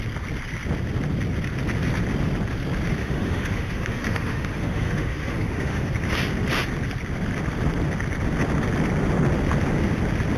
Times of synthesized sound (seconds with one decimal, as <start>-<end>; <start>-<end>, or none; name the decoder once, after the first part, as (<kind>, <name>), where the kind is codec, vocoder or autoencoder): 3.0-5.9 (autoencoder, DAC-VAE)